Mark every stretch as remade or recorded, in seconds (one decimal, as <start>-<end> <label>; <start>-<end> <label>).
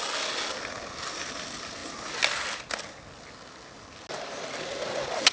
0.0-5.3 recorded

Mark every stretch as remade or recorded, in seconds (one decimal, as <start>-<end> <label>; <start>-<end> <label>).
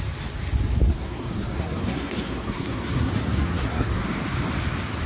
0.0-0.9 recorded; 0.9-4.0 remade; 4.0-5.1 recorded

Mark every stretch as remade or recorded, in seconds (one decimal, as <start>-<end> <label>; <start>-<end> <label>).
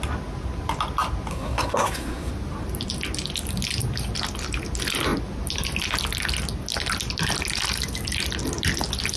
0.0-1.3 recorded; 1.3-2.3 remade; 2.3-9.2 recorded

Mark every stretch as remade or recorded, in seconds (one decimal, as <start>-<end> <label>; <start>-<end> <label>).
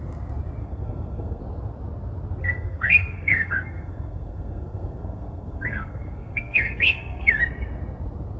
0.0-0.6 recorded; 0.6-1.4 remade; 1.4-2.4 recorded; 2.4-7.4 remade; 7.4-8.4 recorded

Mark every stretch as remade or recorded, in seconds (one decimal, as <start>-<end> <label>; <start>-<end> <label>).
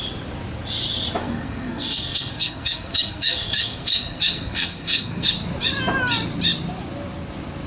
0.0-1.2 recorded; 1.2-5.3 remade; 5.3-7.7 recorded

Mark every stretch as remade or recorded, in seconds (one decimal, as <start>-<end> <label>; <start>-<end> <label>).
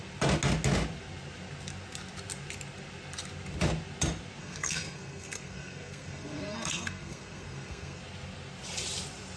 0.0-4.4 recorded; 4.4-8.0 remade; 8.0-9.4 recorded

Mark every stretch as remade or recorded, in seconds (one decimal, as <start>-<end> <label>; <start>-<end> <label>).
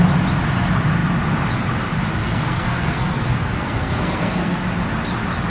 0.0-2.2 recorded; 2.2-4.6 remade; 4.6-5.5 recorded